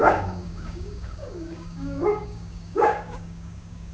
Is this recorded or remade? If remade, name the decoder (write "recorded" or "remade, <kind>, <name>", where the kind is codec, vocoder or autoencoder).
remade, codec, DAC